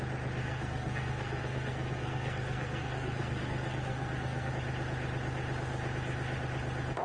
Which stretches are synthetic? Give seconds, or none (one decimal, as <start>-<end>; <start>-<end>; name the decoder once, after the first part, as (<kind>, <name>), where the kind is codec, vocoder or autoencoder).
0.4-4.5 (codec, SNAC)